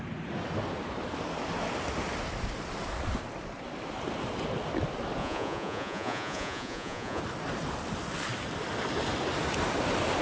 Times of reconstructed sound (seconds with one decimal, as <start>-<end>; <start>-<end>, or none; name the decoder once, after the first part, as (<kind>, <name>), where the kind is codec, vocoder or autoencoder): 5.2-7.2 (vocoder, Vocos)